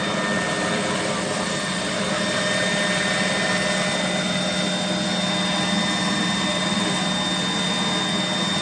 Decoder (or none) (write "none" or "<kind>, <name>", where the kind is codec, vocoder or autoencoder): none